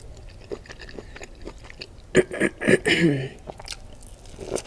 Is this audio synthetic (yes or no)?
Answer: no